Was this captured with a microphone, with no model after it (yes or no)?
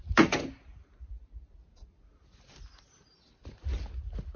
yes